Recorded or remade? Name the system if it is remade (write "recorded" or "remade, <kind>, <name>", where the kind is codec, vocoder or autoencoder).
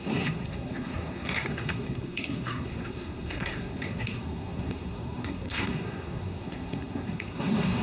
remade, codec, SNAC